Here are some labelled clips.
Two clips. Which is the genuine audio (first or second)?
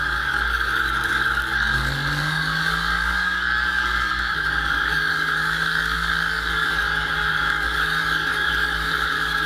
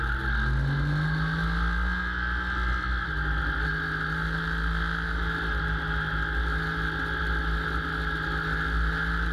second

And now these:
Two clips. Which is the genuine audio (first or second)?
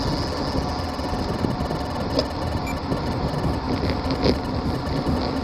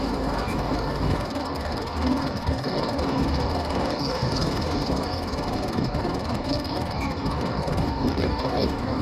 first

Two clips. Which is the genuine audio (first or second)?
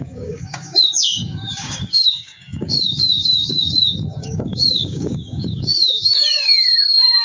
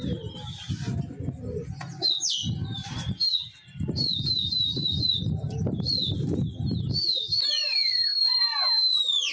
second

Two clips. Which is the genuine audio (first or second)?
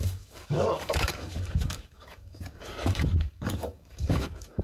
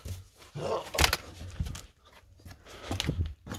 second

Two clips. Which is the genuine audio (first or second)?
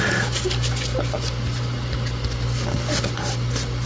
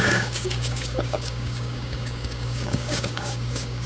first